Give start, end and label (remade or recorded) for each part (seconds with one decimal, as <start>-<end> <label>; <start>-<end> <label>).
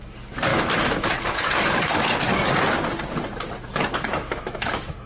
0.0-0.5 recorded; 0.5-2.5 remade; 2.5-3.7 recorded; 3.7-5.1 remade